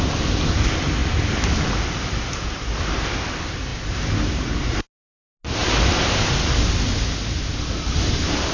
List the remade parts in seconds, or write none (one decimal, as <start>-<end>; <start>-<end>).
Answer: 1.0-2.8; 3.7-4.8